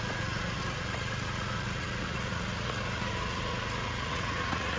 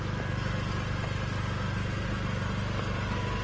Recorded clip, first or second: second